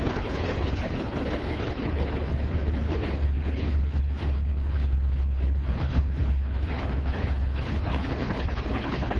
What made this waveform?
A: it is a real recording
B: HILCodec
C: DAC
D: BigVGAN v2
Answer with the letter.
B